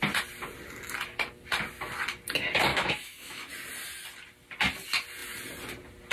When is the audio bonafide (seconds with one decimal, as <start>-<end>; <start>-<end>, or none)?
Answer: 0.0-2.7; 3.5-6.1